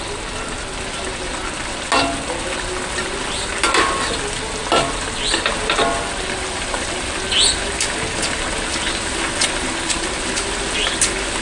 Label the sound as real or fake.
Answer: real